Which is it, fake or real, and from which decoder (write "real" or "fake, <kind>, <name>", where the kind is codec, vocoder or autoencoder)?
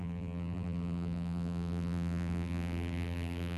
fake, vocoder, BigVGAN v2